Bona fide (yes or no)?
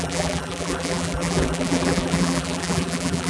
no